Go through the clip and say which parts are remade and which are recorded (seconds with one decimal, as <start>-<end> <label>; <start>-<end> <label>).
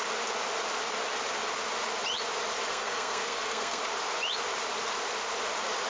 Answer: 0.0-2.7 recorded; 2.7-3.8 remade; 3.8-5.9 recorded